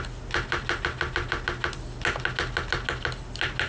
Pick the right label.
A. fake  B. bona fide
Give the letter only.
B